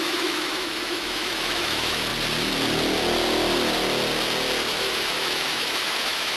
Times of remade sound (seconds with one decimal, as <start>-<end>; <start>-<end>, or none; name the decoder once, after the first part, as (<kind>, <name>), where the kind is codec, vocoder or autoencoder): 0.0-2.1 (autoencoder, DAC-VAE); 4.7-6.4